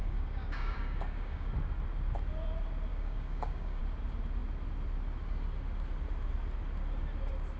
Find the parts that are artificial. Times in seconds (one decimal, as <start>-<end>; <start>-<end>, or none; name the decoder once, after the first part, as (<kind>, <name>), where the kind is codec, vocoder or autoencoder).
0.0-1.5 (codec, DAC); 2.9-3.8